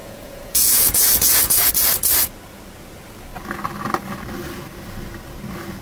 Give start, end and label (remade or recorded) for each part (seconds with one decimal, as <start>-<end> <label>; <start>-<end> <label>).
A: 0.0-1.7 remade; 1.7-5.8 recorded